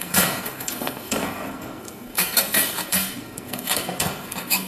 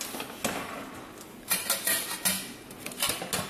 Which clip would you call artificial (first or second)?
first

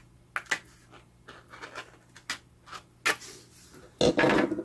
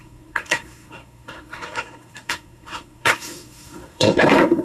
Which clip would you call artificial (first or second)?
second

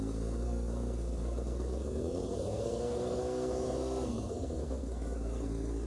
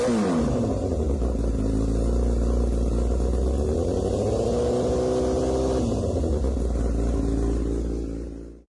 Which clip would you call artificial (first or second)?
first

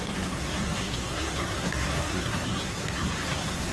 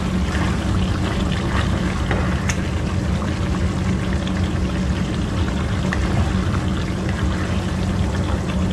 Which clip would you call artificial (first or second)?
first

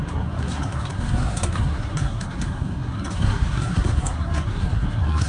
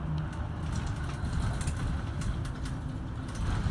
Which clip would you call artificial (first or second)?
first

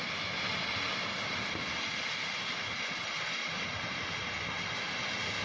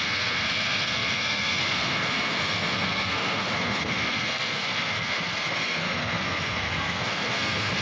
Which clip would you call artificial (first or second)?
second